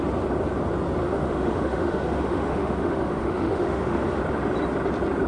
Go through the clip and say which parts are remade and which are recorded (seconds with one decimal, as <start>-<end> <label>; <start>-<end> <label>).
0.0-1.0 recorded; 1.0-4.2 remade; 4.2-5.3 recorded